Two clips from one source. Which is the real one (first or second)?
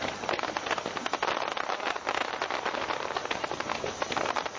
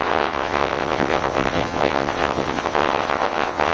first